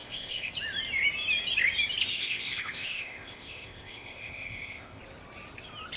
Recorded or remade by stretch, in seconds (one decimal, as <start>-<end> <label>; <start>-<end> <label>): 0.0-0.5 remade; 0.5-2.1 recorded; 2.1-5.0 remade; 5.0-6.0 recorded